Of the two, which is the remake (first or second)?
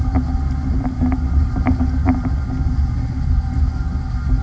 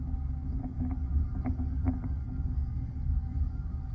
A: second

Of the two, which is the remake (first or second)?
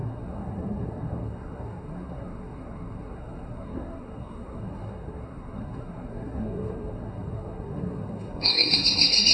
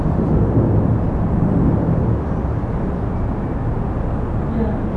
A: first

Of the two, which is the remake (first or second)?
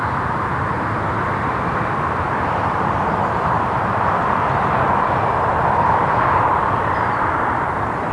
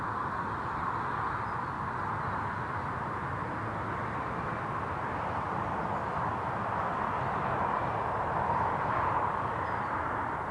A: first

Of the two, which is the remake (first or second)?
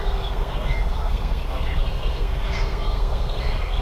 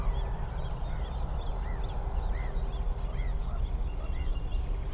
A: first